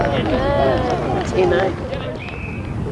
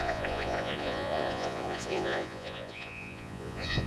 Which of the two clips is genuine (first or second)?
first